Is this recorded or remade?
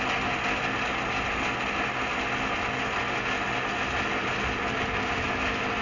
recorded